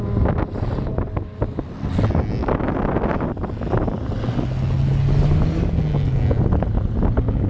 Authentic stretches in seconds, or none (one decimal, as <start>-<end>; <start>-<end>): 0.0-7.5